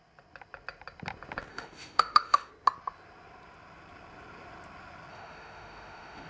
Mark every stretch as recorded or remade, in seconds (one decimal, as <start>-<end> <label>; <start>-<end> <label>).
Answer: 0.0-1.5 recorded; 1.5-2.5 remade; 2.5-5.1 recorded; 5.1-6.3 remade